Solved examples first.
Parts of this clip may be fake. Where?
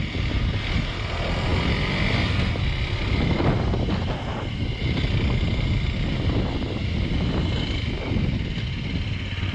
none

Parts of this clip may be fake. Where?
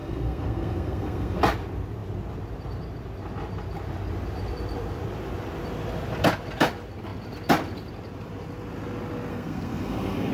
0.0-1.4 (codec, SNAC); 9.3-10.3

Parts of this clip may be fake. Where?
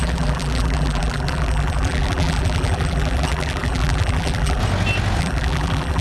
0.0-4.6 (vocoder, BigVGAN v2); 5.2-6.0